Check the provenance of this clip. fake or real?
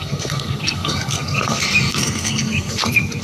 fake